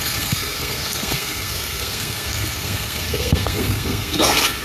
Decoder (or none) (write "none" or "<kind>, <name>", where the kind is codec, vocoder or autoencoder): codec, SNAC